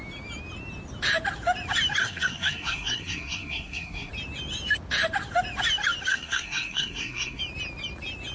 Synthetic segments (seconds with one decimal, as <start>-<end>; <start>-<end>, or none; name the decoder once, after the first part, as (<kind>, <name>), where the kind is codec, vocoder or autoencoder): 2.0-4.1 (codec, SNAC); 6.1-7.4